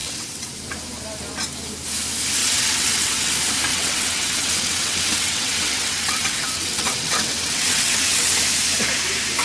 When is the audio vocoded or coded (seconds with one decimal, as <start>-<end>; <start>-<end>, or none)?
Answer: 0.0-0.5; 2.4-3.3; 3.7-8.3